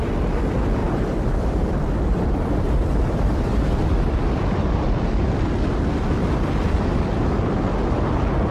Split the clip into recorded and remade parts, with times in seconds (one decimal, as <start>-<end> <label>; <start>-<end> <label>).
0.0-0.8 recorded; 0.8-5.7 remade; 5.7-6.2 recorded; 6.2-7.0 remade; 7.0-8.5 recorded